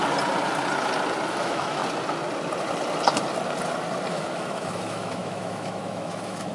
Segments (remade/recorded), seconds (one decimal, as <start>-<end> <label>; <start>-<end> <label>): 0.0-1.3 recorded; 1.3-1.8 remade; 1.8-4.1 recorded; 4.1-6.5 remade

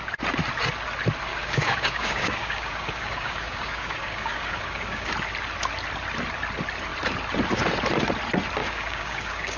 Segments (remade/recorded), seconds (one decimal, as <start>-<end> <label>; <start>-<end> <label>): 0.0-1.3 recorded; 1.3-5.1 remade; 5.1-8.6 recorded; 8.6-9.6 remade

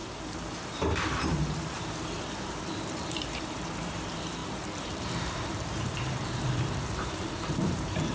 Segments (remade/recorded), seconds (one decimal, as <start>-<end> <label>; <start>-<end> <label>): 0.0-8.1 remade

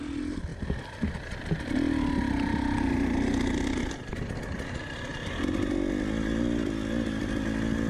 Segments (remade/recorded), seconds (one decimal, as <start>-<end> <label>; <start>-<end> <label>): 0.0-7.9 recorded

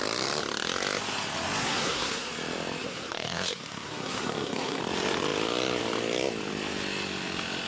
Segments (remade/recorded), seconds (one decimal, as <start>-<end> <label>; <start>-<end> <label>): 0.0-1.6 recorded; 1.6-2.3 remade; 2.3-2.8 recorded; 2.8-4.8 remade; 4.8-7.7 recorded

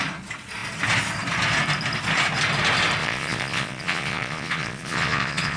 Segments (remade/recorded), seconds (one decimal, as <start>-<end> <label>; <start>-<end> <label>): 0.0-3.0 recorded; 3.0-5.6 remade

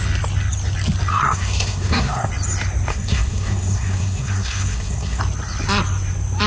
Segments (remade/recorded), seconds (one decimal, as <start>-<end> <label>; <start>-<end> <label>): 0.0-1.1 recorded; 1.1-2.3 remade; 2.3-2.9 recorded; 2.9-5.2 remade; 5.2-6.5 recorded

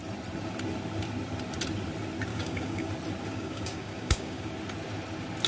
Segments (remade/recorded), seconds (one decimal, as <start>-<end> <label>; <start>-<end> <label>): 0.0-2.3 recorded; 2.3-2.9 remade; 2.9-3.3 recorded; 3.3-4.5 remade; 4.5-5.5 recorded